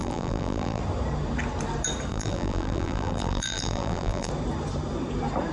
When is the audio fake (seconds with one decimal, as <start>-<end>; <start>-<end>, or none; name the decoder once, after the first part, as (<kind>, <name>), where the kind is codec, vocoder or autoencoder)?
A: 0.0-0.8 (vocoder, BigVGAN v2); 2.1-4.3